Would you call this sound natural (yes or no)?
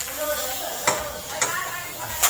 no